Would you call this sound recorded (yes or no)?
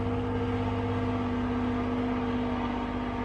yes